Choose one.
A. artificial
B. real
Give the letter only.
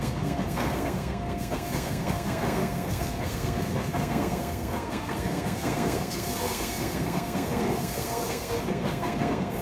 A